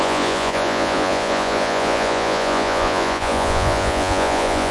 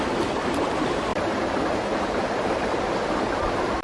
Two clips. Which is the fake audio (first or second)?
first